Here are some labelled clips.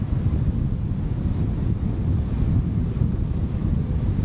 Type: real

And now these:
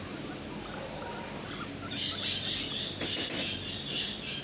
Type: real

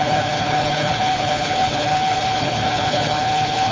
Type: fake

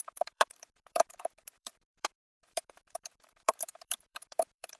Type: fake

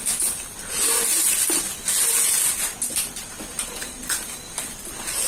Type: real